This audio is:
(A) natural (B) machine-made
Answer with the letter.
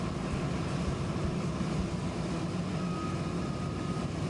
A